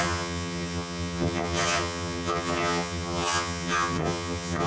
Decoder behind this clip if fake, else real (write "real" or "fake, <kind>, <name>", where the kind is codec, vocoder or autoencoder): fake, vocoder, HiFi-GAN